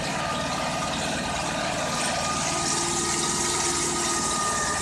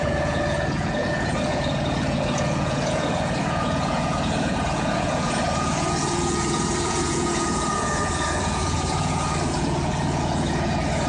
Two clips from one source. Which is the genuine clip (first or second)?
first